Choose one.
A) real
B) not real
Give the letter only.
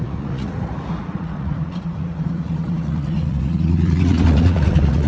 B